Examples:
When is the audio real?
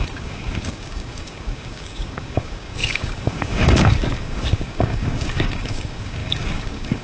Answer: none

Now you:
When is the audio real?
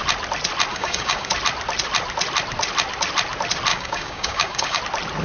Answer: 0.0-0.7; 1.3-3.7; 4.8-5.2